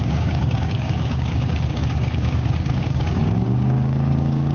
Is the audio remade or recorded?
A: remade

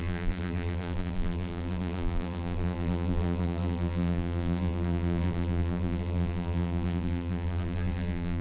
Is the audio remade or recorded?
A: remade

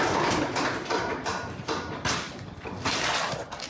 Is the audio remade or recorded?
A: recorded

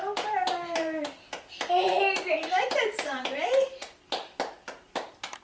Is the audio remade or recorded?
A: remade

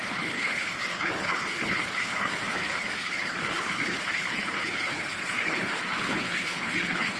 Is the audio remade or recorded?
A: remade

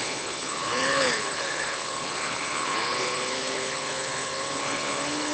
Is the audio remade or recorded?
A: remade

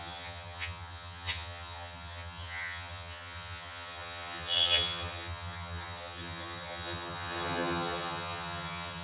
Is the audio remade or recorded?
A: remade